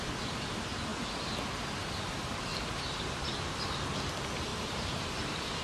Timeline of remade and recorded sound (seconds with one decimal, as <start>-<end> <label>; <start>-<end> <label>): 0.0-2.5 recorded; 2.5-3.5 remade; 3.5-4.5 recorded; 4.5-5.6 remade